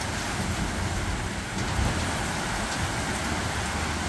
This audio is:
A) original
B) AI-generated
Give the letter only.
A